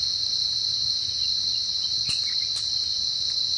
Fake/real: real